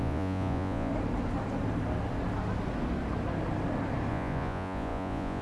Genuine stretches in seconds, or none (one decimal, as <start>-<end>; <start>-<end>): 0.9-4.1